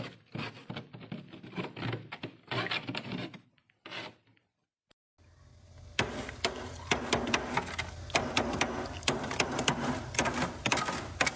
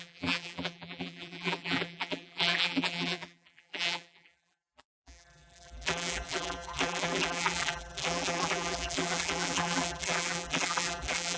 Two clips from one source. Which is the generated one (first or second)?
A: second